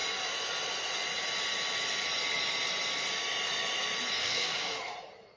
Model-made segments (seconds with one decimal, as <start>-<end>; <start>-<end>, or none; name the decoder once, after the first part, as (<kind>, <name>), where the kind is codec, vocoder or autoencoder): 4.2-4.8 (codec, DAC)